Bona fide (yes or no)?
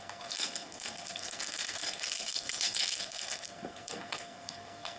no